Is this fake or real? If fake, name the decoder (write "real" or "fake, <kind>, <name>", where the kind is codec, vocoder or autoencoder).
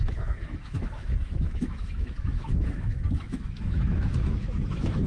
fake, autoencoder, DAC-VAE